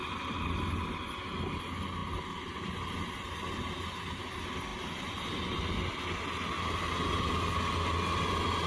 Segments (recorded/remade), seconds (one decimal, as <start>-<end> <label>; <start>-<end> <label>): 0.0-8.7 recorded